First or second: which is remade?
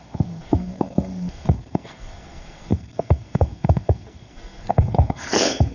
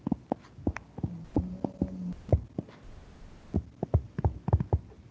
first